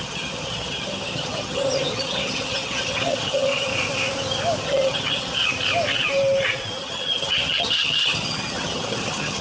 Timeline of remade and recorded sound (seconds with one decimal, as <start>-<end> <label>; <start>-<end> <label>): 0.0-3.7 remade; 3.7-4.6 recorded; 4.6-5.5 remade; 5.5-6.8 recorded; 6.8-9.4 remade